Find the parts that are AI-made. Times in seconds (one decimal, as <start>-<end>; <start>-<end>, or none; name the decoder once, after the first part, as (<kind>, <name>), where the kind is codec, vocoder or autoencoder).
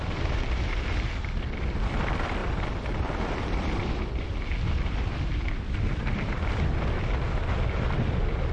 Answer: 2.4-3.1 (vocoder, BigVGAN v2)